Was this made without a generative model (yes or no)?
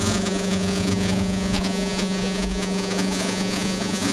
no